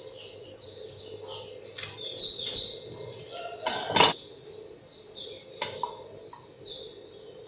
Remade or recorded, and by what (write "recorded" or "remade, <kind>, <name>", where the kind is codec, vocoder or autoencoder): recorded